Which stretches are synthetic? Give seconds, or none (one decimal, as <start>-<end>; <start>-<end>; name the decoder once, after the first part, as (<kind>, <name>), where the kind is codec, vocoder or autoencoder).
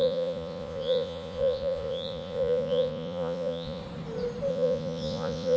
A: 0.0-3.8 (vocoder, Vocos); 4.5-5.6